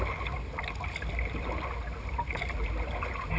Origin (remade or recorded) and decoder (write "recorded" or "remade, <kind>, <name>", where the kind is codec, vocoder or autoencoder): recorded